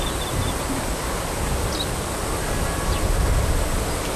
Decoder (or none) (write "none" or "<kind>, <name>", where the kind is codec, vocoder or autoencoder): none